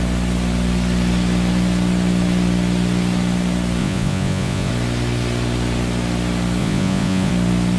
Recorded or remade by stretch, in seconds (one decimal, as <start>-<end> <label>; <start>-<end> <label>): 0.0-3.8 recorded; 3.8-4.7 remade; 4.7-6.6 recorded; 6.6-7.3 remade; 7.3-7.8 recorded